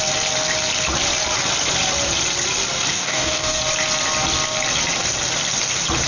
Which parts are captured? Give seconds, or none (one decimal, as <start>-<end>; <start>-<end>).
0.0-2.9; 3.6-6.1